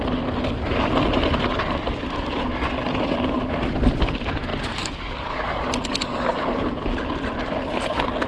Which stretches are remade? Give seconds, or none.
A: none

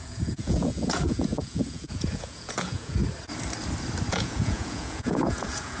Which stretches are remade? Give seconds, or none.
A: 0.0-3.0 (vocoder, Vocos); 4.1-5.8